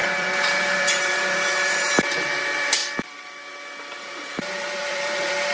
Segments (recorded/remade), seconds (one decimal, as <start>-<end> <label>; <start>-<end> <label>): 0.0-2.8 remade; 2.8-4.0 recorded; 4.0-5.5 remade